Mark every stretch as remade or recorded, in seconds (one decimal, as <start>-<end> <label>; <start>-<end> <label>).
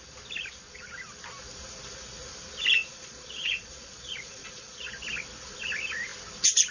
0.0-2.8 recorded; 2.8-4.9 remade; 4.9-6.7 recorded